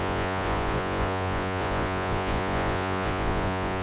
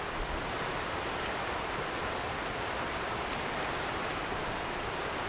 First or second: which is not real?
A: first